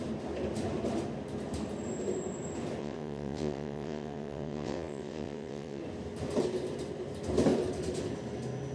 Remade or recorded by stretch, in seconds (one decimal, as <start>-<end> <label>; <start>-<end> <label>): 0.0-2.8 recorded; 2.8-5.8 remade; 5.8-8.7 recorded